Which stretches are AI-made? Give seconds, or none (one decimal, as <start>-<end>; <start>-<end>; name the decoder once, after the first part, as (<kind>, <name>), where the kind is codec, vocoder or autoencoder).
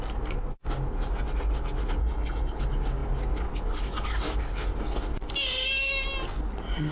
2.0-2.6 (codec, HILCodec)